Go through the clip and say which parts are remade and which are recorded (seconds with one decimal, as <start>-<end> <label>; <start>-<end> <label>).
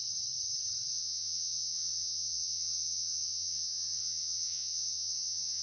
0.0-0.9 recorded; 0.9-5.6 remade